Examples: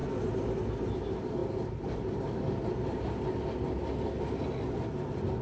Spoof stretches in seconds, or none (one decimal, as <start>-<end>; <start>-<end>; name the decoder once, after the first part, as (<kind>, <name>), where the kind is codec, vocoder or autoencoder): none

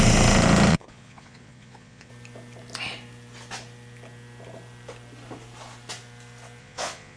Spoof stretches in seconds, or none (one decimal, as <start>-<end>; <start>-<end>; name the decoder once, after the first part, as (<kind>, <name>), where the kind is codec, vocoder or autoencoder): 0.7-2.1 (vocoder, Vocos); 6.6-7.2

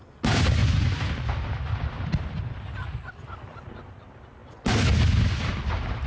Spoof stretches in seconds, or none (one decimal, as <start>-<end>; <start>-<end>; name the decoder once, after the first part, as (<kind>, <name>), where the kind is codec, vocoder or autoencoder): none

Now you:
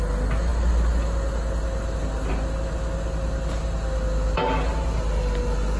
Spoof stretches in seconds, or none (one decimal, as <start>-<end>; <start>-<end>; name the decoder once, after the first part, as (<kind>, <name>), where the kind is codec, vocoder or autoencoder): none